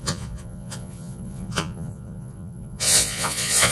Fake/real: fake